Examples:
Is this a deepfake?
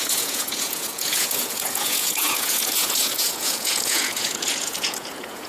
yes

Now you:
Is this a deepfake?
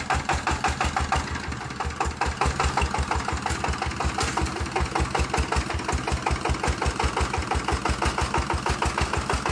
no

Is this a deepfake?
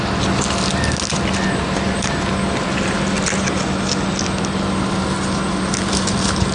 no